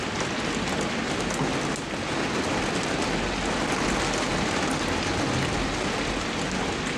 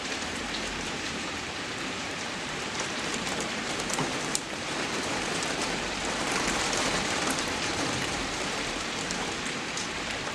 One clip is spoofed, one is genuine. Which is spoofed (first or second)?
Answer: second